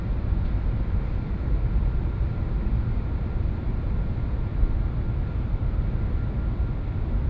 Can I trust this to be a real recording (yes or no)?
yes